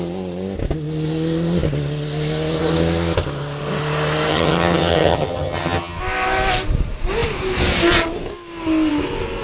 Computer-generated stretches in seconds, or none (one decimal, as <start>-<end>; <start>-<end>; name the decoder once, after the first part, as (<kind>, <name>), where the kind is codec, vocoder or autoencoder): 4.3-6.0 (vocoder, HiFi-GAN)